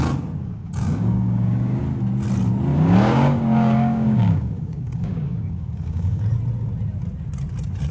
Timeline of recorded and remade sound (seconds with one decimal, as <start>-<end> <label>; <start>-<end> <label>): 0.0-0.4 recorded; 0.4-1.8 remade; 1.8-2.7 recorded; 2.7-6.2 remade; 6.2-7.9 recorded